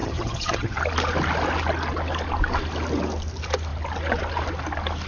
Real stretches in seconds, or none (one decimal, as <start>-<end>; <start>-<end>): 0.8-5.1